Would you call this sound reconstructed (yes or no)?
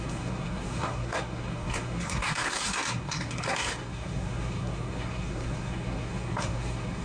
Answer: yes